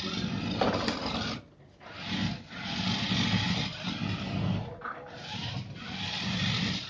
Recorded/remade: recorded